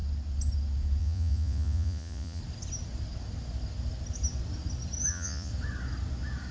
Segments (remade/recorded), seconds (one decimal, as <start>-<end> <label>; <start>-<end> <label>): 0.0-1.0 recorded; 1.0-2.4 remade; 2.4-5.1 recorded; 5.1-5.5 remade; 5.5-6.5 recorded

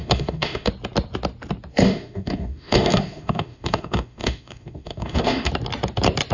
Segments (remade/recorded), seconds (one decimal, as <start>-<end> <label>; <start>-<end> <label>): 0.0-0.7 remade; 0.7-1.7 recorded; 1.7-5.5 remade; 5.5-6.3 recorded

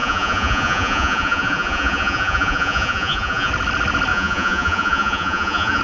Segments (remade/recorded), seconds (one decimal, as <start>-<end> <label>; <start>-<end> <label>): 0.0-3.5 remade; 3.5-4.1 recorded; 4.1-5.8 remade

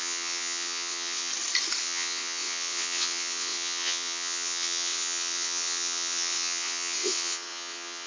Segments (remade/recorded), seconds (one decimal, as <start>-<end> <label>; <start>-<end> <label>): 0.0-1.3 remade; 1.3-1.8 recorded; 1.8-8.1 remade

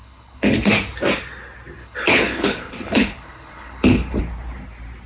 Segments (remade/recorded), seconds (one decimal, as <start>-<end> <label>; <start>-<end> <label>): 0.0-0.7 remade; 0.7-1.8 recorded; 1.8-4.2 remade; 4.2-5.1 recorded

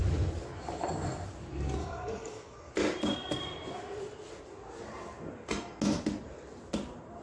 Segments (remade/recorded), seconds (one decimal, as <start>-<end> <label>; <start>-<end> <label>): 0.0-1.8 recorded; 1.8-2.7 remade; 2.7-7.2 recorded

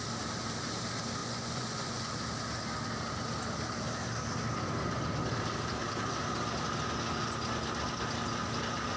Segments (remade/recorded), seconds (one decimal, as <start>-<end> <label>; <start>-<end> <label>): 0.0-1.2 recorded; 1.2-2.1 remade; 2.1-9.0 recorded

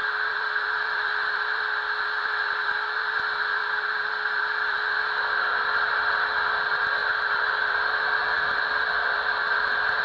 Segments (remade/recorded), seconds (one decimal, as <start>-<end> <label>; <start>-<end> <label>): 0.0-5.0 remade; 5.0-7.0 recorded; 7.0-10.0 remade